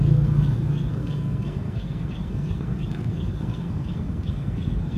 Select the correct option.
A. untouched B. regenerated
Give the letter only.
B